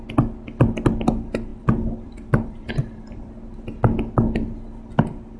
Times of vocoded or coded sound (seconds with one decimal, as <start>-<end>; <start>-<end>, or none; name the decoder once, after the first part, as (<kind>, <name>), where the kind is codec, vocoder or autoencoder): 1.5-3.3 (vocoder, BigVGAN v2)